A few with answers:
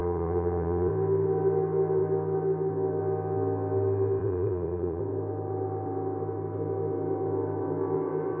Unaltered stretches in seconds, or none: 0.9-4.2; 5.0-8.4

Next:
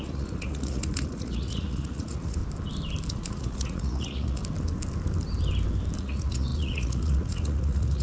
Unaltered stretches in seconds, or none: 2.4-3.1; 4.4-6.0

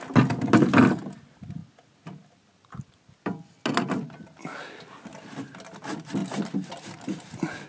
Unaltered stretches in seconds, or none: 0.0-7.7

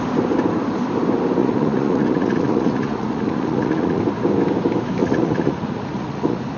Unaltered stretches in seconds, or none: 0.0-1.4; 4.0-5.0

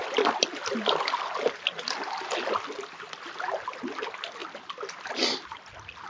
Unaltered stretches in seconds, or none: 0.0-6.1